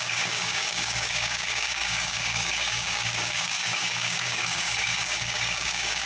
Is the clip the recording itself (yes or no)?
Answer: no